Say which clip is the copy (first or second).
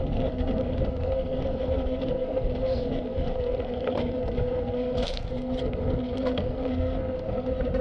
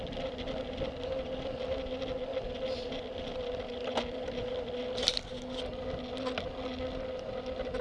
first